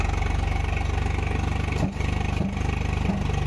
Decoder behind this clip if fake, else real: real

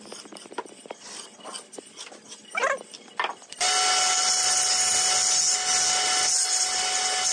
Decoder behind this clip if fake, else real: real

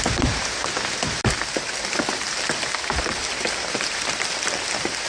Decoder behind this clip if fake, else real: real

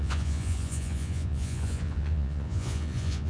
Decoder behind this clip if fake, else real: fake, vocoder, Vocos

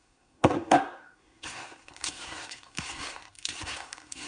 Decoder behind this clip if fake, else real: fake, codec, SNAC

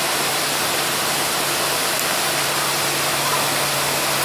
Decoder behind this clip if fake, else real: real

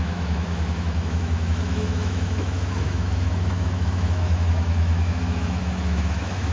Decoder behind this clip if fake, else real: fake, autoencoder, DAC-VAE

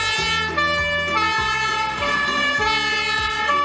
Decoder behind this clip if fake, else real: real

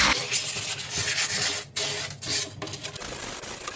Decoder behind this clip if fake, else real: real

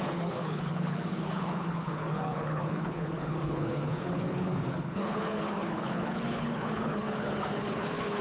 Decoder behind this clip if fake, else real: fake, codec, HILCodec